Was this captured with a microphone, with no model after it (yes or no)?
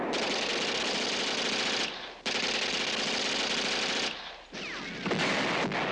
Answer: yes